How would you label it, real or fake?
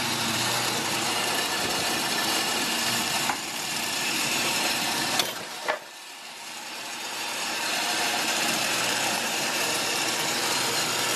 fake